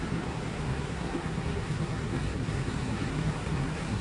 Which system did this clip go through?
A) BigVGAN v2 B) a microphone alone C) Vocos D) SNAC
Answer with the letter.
D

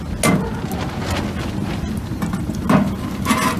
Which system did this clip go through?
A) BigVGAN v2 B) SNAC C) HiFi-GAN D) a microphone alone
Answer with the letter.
D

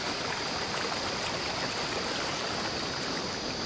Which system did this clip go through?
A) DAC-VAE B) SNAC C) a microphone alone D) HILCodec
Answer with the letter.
C